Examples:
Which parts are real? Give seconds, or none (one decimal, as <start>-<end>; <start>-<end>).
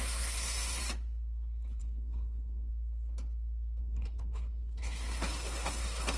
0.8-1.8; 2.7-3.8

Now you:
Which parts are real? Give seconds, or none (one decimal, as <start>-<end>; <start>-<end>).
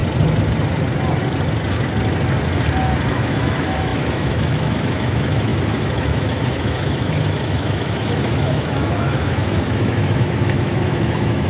0.0-3.1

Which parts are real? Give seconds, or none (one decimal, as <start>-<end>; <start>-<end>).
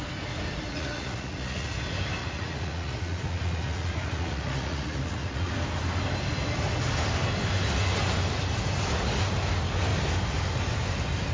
0.0-0.7; 1.7-2.2; 5.5-11.3